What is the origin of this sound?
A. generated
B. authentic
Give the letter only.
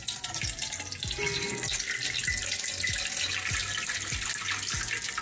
B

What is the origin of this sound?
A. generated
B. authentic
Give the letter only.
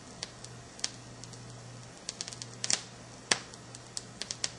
B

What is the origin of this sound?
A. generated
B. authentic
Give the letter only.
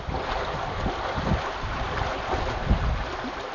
B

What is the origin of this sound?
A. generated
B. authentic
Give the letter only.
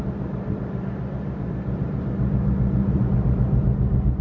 B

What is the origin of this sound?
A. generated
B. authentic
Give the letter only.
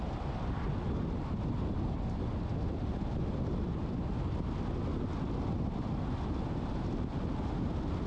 B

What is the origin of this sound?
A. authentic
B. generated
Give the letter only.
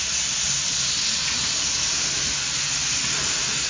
A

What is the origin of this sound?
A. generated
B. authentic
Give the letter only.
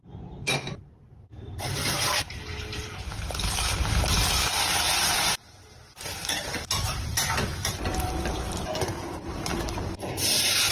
A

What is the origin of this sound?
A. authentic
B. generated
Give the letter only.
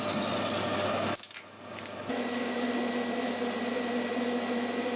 A